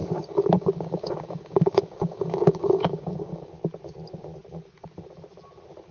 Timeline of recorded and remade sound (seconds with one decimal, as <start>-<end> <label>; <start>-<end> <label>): 0.0-3.5 remade; 3.5-5.9 recorded